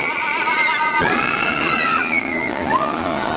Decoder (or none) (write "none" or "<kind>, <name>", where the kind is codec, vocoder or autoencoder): vocoder, Vocos